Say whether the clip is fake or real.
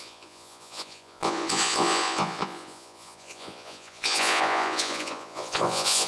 fake